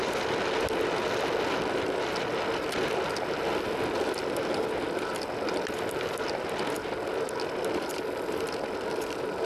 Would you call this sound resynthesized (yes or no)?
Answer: no